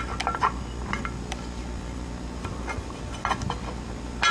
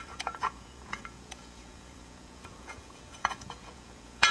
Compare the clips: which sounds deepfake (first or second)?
second